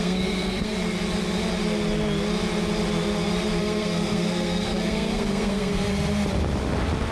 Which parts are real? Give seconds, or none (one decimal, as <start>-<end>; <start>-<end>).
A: 0.7-3.6; 5.9-7.1

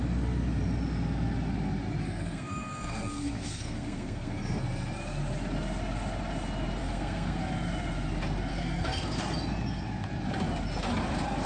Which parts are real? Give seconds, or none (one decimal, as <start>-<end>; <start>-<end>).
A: 0.0-2.0; 4.6-6.8; 7.4-8.5; 9.2-11.5

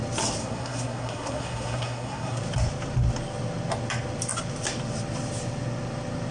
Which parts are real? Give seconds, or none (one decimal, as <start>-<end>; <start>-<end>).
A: 0.0-0.4; 2.4-6.3

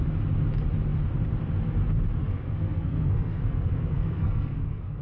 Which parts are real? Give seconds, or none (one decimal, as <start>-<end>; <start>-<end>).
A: 0.0-2.2

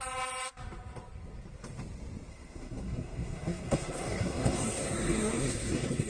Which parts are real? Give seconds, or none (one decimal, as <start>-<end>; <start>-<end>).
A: 0.0-2.3